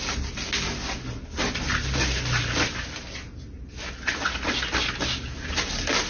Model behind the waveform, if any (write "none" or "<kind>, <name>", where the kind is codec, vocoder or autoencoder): none